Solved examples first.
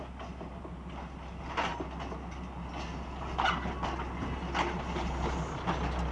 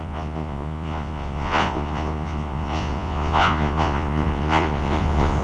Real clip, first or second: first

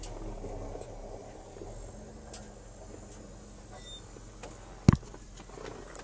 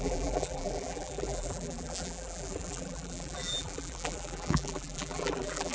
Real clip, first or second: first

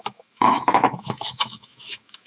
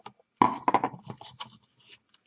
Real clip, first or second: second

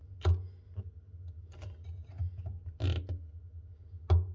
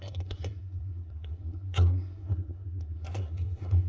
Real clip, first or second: first